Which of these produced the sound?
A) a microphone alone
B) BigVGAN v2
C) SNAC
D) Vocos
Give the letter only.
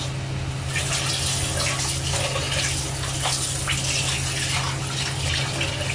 A